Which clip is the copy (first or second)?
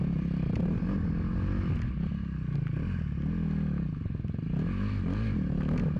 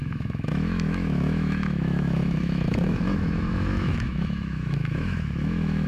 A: second